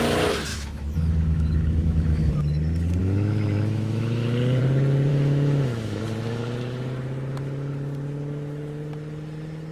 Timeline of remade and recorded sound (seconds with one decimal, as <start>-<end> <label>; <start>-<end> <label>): 0.0-0.5 recorded; 0.5-2.3 remade; 2.3-3.0 recorded; 3.0-4.6 remade; 4.6-5.1 recorded; 5.1-6.0 remade; 6.0-9.7 recorded